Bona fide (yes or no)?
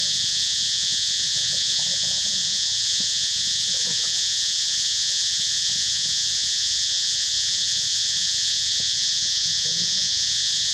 no